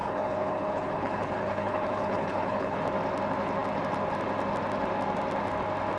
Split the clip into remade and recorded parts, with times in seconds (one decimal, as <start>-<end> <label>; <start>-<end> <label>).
0.0-2.8 remade; 2.8-6.0 recorded